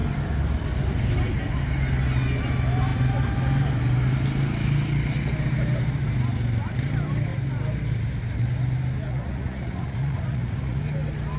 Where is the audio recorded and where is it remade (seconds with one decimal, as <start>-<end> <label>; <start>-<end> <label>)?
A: 0.0-9.1 recorded; 9.1-10.8 remade; 10.8-11.4 recorded